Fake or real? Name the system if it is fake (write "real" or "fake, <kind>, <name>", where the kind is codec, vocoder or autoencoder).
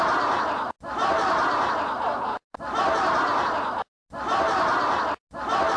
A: real